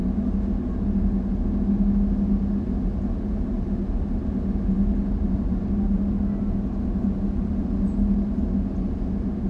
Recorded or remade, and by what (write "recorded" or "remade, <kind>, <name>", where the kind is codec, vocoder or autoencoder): recorded